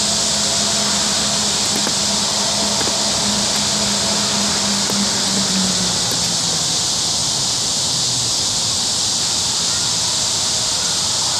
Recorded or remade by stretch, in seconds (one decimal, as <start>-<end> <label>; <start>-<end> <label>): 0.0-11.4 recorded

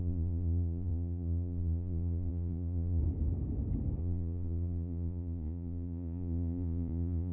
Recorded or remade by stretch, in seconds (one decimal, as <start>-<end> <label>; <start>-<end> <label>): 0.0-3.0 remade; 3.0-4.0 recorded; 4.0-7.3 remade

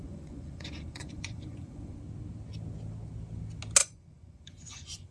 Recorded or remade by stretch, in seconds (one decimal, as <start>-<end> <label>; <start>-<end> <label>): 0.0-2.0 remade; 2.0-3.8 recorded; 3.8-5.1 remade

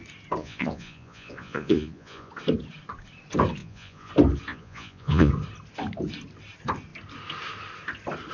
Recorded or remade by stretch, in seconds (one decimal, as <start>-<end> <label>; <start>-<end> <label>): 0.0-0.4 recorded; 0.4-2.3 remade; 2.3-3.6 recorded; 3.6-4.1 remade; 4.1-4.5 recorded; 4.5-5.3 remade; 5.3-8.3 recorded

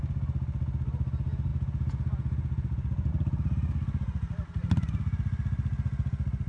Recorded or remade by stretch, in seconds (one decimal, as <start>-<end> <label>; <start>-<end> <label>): 0.0-1.5 recorded; 1.5-3.1 remade; 3.1-6.5 recorded

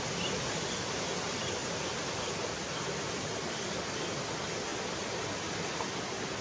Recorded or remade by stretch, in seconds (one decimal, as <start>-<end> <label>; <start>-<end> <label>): 0.0-6.4 recorded